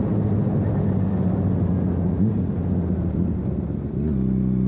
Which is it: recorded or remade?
recorded